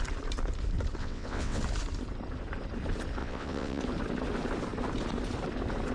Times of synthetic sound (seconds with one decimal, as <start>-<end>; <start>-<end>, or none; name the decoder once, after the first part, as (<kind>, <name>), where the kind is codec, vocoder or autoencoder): 1.0-1.6 (vocoder, WaveNeXt); 3.2-3.8